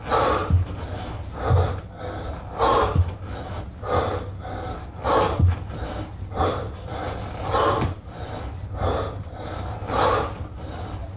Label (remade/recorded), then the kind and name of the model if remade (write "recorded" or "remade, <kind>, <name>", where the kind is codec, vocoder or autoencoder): recorded